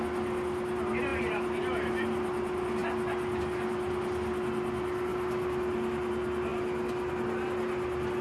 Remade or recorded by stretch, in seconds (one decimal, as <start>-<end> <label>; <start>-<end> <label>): 0.0-1.1 recorded; 1.1-2.0 remade; 2.0-8.2 recorded